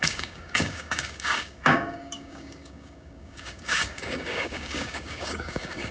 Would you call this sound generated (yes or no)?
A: yes